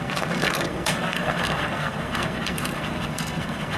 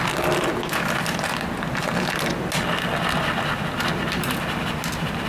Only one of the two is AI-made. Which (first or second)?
first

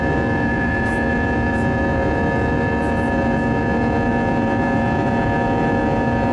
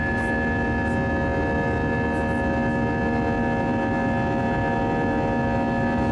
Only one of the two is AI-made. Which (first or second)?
first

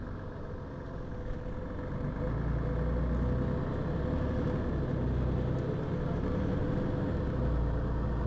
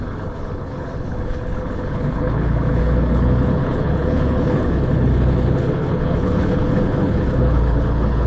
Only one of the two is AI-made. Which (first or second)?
second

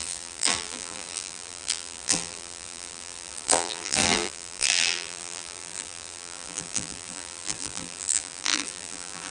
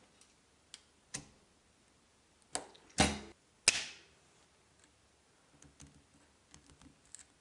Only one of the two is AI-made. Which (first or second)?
first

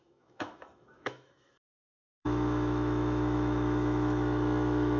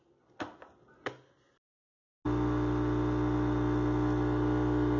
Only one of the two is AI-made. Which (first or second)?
first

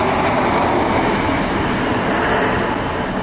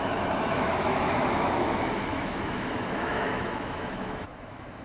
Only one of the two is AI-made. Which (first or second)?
second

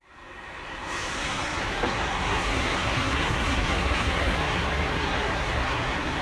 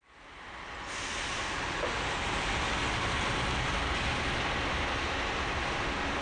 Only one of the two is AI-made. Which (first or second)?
first